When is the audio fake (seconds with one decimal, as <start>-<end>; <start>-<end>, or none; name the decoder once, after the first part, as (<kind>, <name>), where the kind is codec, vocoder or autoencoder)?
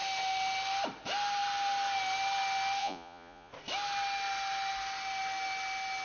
2.8-3.5 (vocoder, Vocos)